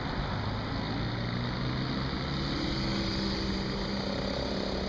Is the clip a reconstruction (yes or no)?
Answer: no